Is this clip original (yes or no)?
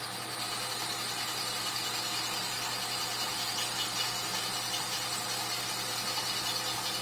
yes